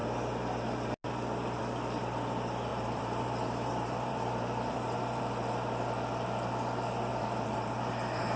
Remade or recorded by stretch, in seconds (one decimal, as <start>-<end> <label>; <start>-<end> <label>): 0.0-2.7 recorded; 2.7-5.2 remade; 5.2-7.1 recorded; 7.1-7.9 remade; 7.9-8.4 recorded